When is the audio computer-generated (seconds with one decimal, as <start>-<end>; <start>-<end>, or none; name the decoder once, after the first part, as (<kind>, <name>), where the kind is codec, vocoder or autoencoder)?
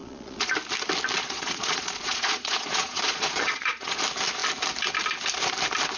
0.0-0.5 (vocoder, Vocos); 1.2-4.0